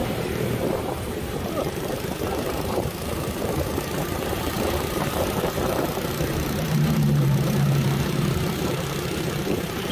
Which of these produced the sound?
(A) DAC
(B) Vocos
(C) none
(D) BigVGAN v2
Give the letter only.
D